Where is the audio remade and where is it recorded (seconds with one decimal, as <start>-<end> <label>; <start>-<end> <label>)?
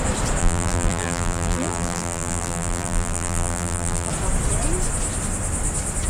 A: 0.0-0.4 recorded; 0.4-4.1 remade; 4.1-6.1 recorded